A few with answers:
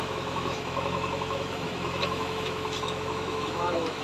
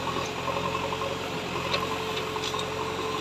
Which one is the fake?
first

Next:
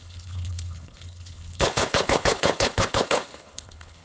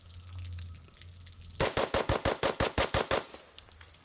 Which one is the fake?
first